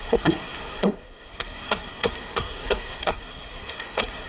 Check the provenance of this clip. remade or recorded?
remade